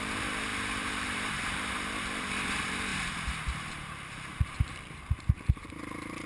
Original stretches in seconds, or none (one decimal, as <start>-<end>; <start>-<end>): none